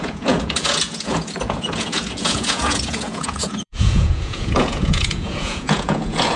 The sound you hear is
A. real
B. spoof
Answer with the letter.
B